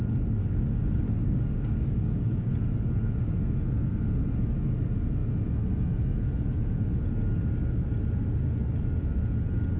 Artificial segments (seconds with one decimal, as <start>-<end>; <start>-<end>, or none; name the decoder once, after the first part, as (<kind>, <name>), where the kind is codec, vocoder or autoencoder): 0.4-2.5 (codec, DAC)